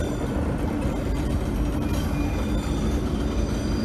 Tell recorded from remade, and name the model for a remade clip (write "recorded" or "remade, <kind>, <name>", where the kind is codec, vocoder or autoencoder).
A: recorded